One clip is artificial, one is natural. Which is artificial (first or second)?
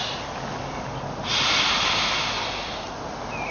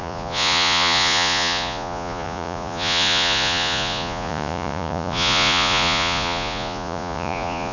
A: second